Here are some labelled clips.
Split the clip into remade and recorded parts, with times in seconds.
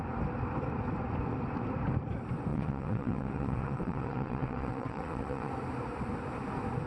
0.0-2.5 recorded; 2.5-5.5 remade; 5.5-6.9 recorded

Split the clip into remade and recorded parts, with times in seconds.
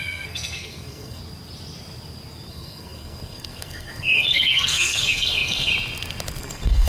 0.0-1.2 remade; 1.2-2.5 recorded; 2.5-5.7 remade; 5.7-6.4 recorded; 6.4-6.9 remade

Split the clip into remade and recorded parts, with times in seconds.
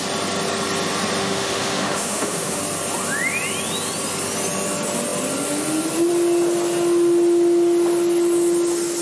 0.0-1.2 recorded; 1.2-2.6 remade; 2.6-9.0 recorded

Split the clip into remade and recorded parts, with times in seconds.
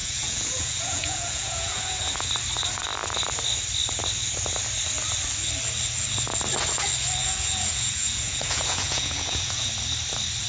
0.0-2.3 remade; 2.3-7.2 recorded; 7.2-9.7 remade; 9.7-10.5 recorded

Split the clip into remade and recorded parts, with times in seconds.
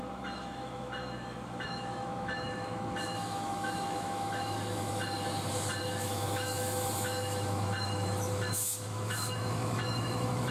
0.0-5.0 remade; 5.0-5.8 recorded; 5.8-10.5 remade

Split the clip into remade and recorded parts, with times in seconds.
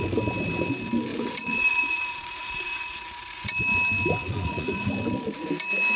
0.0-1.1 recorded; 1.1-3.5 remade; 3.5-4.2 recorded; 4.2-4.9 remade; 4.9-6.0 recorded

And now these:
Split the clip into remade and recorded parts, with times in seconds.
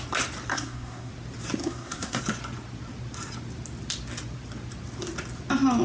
0.0-0.5 recorded; 0.5-1.1 remade; 1.1-1.6 recorded; 1.6-2.2 remade; 2.2-5.8 recorded